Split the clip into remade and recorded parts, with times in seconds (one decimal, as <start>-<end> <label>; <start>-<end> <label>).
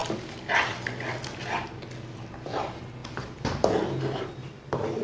0.0-5.0 recorded